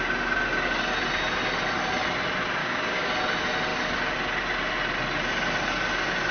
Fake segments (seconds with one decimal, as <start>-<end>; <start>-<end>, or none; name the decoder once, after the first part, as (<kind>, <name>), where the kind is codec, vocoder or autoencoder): 2.6-3.1 (codec, DAC)